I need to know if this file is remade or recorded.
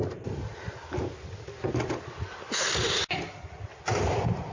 recorded